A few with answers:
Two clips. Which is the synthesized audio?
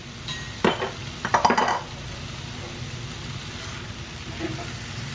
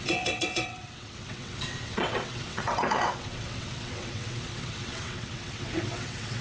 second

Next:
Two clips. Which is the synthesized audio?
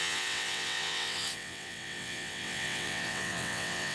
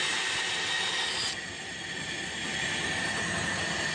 first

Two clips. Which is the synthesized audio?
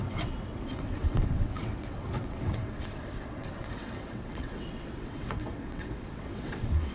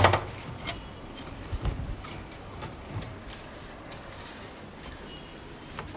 first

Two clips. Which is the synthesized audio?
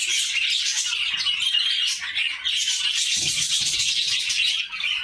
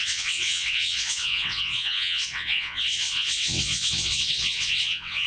second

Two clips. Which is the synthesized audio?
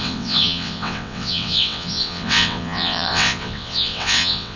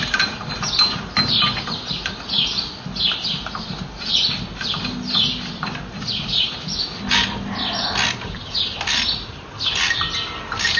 first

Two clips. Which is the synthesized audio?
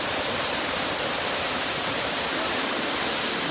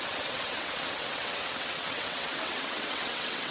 second